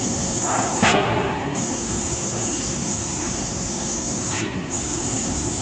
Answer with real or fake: fake